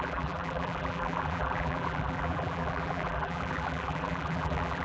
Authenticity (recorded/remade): remade